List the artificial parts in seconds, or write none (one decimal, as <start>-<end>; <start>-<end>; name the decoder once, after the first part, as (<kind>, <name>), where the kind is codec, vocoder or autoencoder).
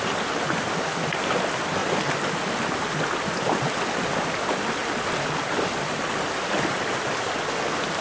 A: none